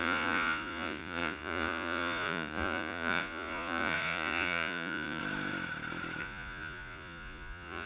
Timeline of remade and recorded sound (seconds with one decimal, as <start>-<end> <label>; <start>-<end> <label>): 0.0-5.2 remade; 5.2-6.2 recorded; 6.2-7.9 remade